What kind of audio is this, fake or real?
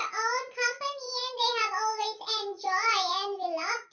real